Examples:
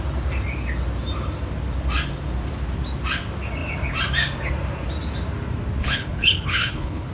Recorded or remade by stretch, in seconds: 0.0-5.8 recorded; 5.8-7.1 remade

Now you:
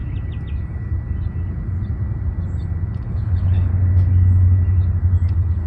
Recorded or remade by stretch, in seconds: 0.0-3.1 recorded; 3.1-3.7 remade; 3.7-5.3 recorded; 5.3-5.7 remade

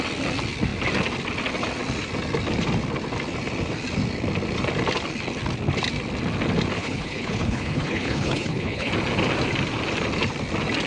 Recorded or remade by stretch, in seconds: 0.0-6.8 recorded; 6.8-8.9 remade; 8.9-10.9 recorded